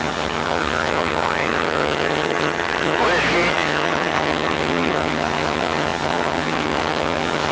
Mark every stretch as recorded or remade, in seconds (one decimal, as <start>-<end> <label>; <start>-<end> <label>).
0.0-3.0 remade; 3.0-3.5 recorded; 3.5-7.5 remade